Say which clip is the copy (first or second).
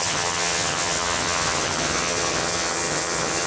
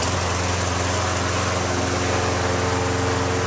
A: first